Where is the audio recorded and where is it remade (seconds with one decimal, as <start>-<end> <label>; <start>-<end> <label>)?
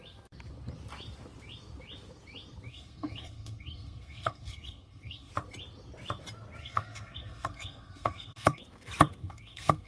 0.0-2.7 recorded; 2.7-5.3 remade; 5.3-6.6 recorded; 6.6-8.6 remade; 8.6-9.2 recorded; 9.2-9.9 remade